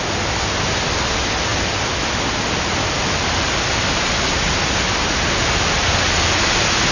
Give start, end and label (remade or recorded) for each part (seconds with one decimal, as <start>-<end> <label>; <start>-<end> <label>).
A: 0.0-6.9 recorded